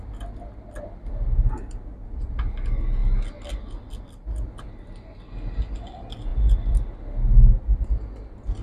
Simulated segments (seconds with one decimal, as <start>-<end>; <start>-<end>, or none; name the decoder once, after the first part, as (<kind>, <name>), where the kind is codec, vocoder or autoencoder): none